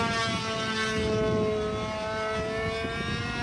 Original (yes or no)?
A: yes